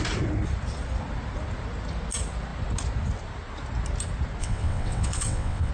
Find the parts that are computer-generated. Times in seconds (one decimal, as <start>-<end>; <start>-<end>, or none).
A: 4.4-5.7

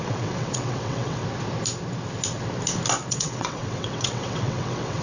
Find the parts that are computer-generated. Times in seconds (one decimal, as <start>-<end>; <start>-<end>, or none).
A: 0.0-1.2; 3.1-5.0

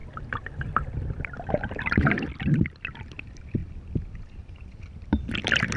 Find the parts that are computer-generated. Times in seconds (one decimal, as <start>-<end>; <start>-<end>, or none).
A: 0.6-3.6; 4.6-5.8

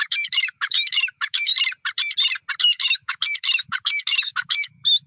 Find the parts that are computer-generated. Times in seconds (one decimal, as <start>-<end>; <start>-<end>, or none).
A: 0.0-1.5; 2.6-5.1

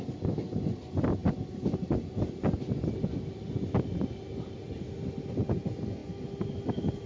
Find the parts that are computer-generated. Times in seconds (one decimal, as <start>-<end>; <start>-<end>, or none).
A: none

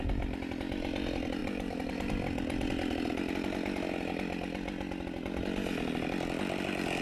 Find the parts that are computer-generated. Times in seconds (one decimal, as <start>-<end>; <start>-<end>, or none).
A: 1.4-2.1